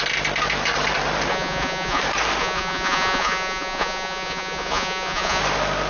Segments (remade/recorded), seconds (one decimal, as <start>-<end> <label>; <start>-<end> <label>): 0.0-1.3 recorded; 1.3-2.0 remade; 2.0-2.4 recorded; 2.4-5.4 remade; 5.4-5.9 recorded